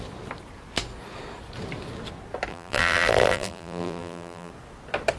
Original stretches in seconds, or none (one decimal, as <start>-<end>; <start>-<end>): 0.0-2.5; 4.5-5.2